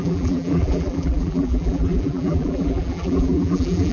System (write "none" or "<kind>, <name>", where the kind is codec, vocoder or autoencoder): vocoder, BigVGAN v2